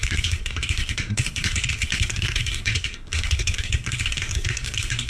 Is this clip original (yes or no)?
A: no